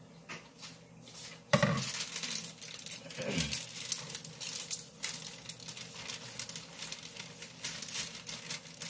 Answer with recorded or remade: recorded